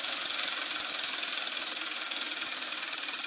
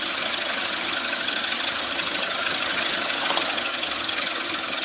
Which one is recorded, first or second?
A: first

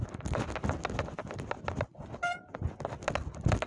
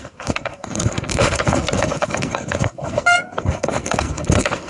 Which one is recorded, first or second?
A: first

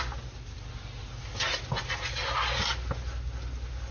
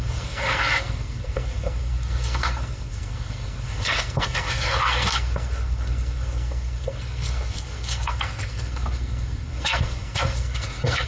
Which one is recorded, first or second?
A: first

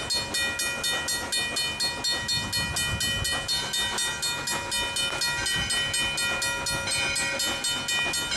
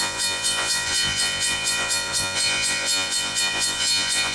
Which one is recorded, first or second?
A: first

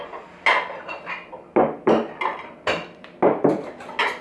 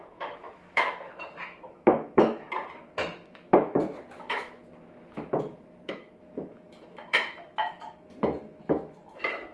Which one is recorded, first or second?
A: first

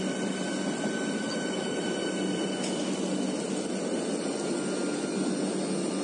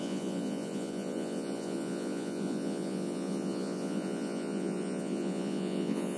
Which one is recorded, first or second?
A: first